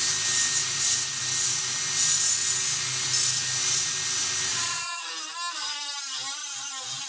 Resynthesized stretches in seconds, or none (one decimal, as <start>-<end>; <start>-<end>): 0.6-1.2; 4.5-5.1; 6.4-7.1